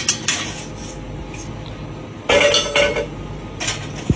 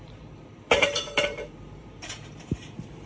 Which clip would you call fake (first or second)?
second